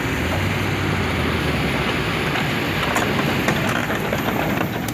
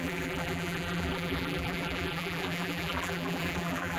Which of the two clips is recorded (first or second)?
first